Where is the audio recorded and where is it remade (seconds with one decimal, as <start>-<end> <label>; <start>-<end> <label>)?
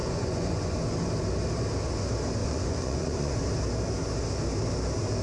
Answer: 0.0-0.8 remade; 0.8-2.4 recorded; 2.4-3.4 remade; 3.4-5.2 recorded